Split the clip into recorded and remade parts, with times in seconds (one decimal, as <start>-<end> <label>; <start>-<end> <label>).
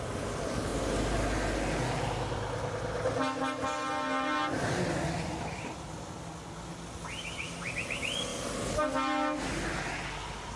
0.0-10.6 recorded